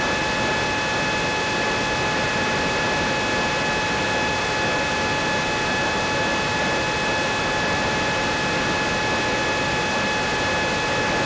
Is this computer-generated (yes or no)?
no